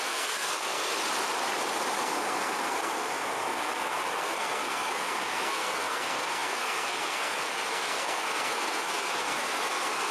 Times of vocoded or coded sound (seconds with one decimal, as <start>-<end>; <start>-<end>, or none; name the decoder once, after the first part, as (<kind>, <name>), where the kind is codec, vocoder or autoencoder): 0.0-0.9 (codec, SNAC); 2.0-10.1